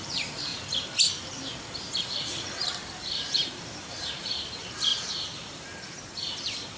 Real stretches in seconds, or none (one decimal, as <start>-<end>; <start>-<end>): 0.5-2.2